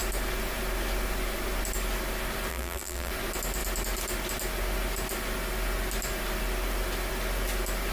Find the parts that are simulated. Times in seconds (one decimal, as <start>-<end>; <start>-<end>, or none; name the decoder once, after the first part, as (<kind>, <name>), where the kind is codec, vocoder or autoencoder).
2.5-3.1 (vocoder, BigVGAN v2)